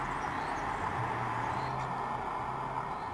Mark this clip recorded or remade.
recorded